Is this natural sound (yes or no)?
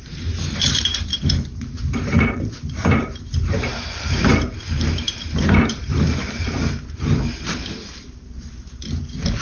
no